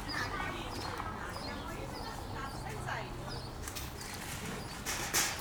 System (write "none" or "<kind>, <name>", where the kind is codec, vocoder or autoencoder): none